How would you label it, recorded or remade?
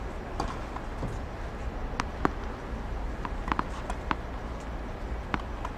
recorded